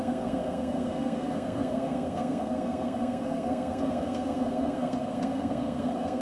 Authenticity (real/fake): fake